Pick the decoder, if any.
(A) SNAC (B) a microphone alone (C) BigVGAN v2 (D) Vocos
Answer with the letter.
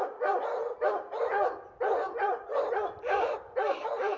B